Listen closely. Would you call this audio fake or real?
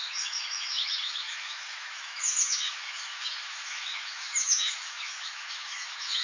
fake